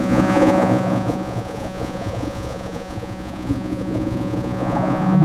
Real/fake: fake